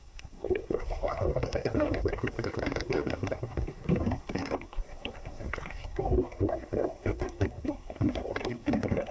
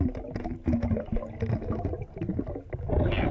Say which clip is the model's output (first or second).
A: first